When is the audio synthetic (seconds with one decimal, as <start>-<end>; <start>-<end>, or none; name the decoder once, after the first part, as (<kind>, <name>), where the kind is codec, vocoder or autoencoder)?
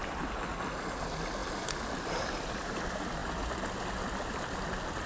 none